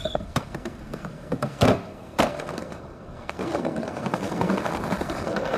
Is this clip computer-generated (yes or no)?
yes